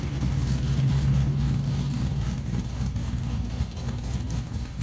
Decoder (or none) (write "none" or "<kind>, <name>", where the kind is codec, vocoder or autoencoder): codec, DAC